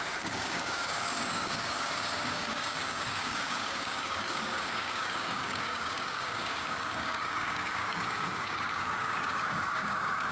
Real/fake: fake